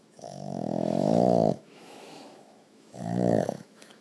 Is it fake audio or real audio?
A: fake